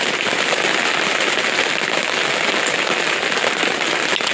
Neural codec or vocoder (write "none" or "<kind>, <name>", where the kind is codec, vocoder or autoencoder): none